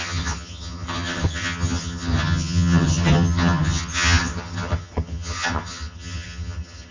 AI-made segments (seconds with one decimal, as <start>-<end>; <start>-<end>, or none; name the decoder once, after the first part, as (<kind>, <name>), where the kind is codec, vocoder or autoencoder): 0.0-6.9 (vocoder, HiFi-GAN)